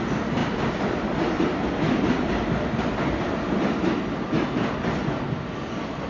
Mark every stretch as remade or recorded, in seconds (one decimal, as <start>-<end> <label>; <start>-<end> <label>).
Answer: 0.0-6.1 recorded